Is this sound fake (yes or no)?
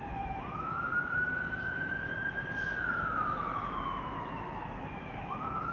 yes